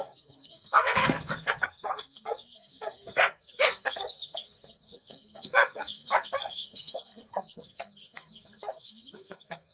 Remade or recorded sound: remade